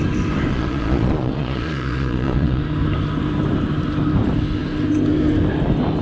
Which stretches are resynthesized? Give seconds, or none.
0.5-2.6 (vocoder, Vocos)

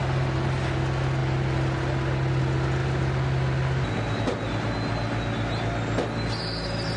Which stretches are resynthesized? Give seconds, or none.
none

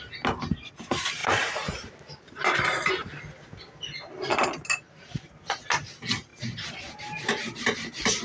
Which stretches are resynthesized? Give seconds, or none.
1.2-3.2 (vocoder, BigVGAN v2); 6.3-8.2

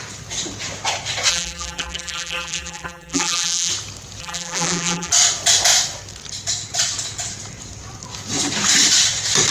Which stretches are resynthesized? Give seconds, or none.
1.3-3.7 (vocoder, BigVGAN v2); 4.2-5.1

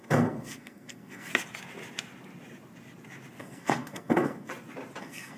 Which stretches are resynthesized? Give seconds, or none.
0.0-1.3 (codec, SNAC); 3.4-4.5; 5.0-5.4

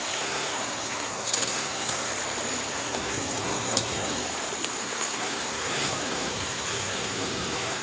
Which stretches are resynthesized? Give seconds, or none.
0.0-2.1 (codec, SNAC); 2.7-4.2; 4.8-7.8

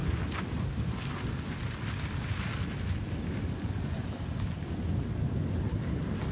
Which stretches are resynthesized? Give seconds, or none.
none

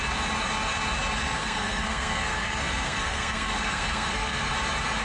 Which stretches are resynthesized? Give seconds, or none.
1.4-4.4 (codec, SNAC)